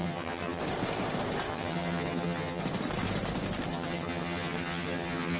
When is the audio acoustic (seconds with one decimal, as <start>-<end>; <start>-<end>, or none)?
0.6-1.5; 2.6-3.7